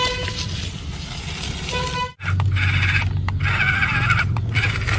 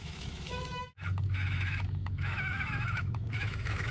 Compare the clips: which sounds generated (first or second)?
second